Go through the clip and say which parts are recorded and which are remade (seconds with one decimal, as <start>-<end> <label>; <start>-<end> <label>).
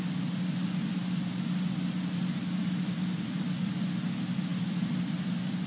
0.0-5.7 recorded